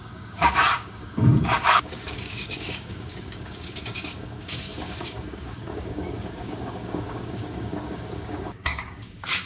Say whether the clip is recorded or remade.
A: remade